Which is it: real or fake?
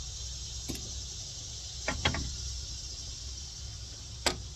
real